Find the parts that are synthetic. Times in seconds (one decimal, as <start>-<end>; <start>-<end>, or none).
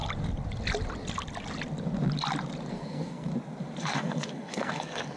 2.7-3.3; 3.8-5.2